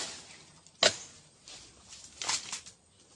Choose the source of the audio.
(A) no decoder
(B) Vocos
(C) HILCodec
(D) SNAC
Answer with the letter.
A